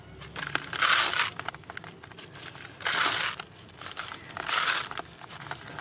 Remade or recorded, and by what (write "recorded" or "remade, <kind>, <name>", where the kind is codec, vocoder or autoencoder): recorded